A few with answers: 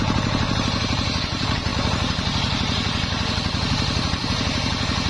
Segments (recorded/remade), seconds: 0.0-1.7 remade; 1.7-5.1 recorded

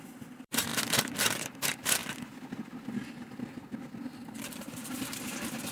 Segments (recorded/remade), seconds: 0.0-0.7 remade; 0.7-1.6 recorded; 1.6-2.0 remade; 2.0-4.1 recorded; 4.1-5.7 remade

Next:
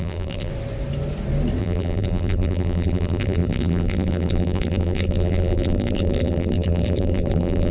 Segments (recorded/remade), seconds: 0.0-0.5 remade; 0.5-1.6 recorded; 1.6-7.7 remade

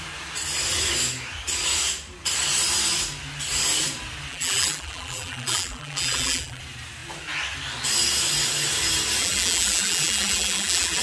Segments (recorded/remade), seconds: 0.0-4.3 recorded; 4.3-6.6 remade; 6.6-9.2 recorded; 9.2-11.0 remade